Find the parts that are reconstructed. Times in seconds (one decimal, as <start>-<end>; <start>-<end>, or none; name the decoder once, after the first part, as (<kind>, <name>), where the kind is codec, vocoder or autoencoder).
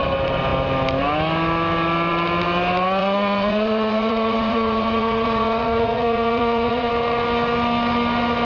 3.0-6.9 (vocoder, Vocos)